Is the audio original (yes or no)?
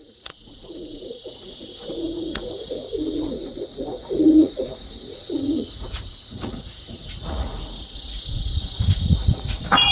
no